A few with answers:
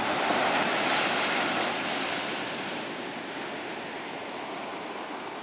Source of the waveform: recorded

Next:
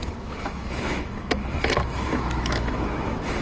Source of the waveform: remade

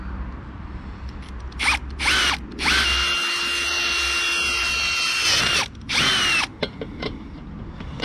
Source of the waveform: recorded